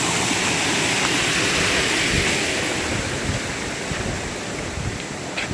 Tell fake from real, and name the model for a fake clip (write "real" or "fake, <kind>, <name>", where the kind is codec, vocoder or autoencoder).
real